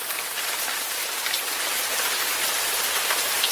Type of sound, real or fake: fake